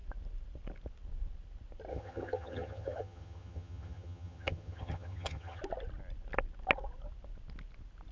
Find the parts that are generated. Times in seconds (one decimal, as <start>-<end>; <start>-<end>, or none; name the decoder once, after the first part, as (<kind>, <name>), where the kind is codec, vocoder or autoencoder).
1.9-5.6 (vocoder, HiFi-GAN)